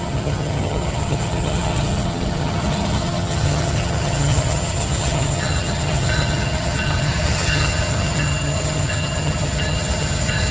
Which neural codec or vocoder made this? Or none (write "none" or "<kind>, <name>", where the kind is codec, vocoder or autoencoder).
vocoder, HiFi-GAN